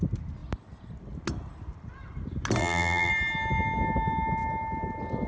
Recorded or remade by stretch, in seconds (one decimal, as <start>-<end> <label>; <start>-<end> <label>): 0.0-2.6 recorded; 2.6-3.1 remade; 3.1-5.3 recorded